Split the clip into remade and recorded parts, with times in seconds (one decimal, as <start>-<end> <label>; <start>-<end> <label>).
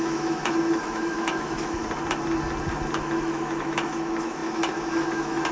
0.0-1.8 remade; 1.8-3.0 recorded; 3.0-5.5 remade